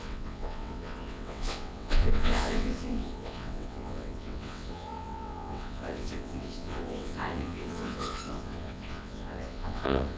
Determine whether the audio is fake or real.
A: fake